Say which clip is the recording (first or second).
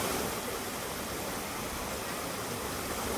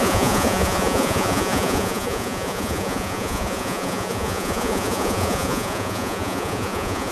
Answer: first